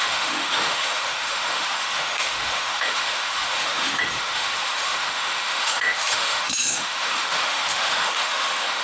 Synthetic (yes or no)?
yes